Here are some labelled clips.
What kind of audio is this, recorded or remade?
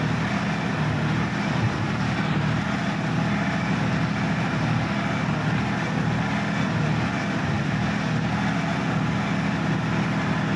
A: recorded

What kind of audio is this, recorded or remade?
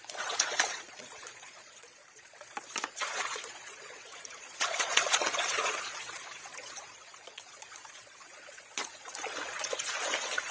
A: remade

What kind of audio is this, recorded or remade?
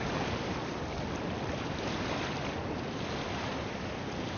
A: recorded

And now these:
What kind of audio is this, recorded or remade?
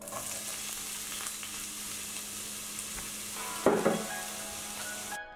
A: recorded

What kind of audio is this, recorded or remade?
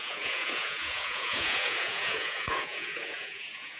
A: remade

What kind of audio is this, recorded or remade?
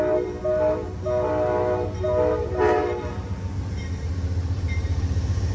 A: remade